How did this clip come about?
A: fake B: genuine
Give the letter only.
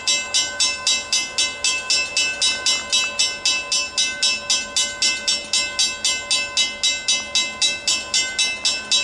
B